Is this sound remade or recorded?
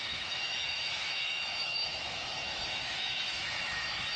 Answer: remade